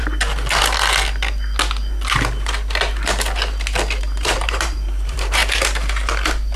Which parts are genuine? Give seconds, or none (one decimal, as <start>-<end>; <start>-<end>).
0.0-4.0; 5.4-6.6